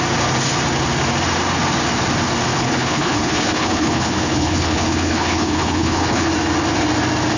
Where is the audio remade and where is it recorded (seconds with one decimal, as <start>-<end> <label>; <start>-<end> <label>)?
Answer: 0.0-2.5 recorded; 2.5-6.3 remade; 6.3-7.4 recorded